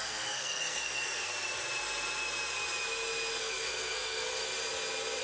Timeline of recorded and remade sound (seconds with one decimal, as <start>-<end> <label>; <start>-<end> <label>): 0.0-1.3 remade; 1.3-3.4 recorded; 3.4-4.4 remade; 4.4-5.2 recorded